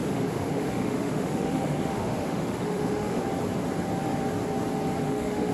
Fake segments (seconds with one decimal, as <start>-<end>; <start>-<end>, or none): 0.0-3.2; 5.0-5.5